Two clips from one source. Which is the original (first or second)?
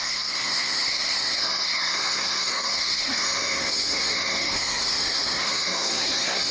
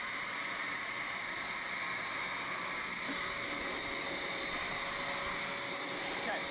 second